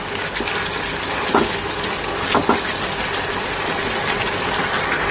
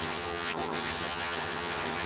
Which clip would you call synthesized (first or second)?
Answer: second